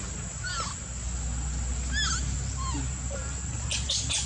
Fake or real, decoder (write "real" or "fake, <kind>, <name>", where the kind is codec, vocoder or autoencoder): real